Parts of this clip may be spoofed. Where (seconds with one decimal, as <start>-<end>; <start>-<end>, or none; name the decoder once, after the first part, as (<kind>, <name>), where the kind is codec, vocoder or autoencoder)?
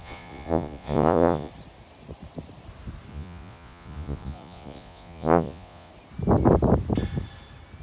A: 0.0-1.5 (vocoder, Vocos); 3.1-5.9